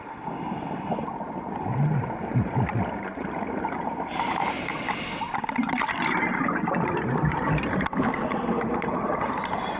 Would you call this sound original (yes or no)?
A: yes